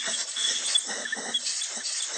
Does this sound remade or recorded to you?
recorded